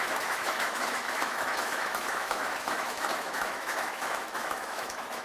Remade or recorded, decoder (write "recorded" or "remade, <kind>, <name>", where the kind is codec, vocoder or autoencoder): remade, autoencoder, DAC-VAE